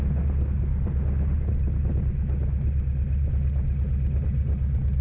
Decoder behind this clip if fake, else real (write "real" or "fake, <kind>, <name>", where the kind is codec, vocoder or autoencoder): real